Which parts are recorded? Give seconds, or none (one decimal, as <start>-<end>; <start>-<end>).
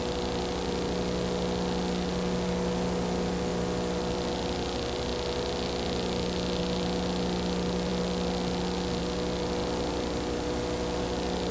0.0-11.5